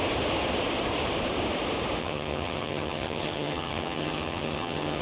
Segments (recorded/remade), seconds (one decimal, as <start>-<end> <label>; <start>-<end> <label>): 0.0-2.0 recorded; 2.0-5.0 remade